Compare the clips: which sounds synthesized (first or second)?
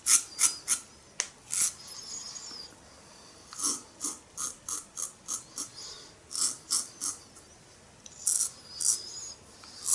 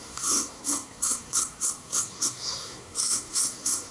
second